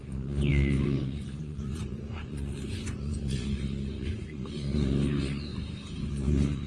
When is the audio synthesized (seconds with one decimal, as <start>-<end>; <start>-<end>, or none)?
0.0-5.5; 6.1-6.7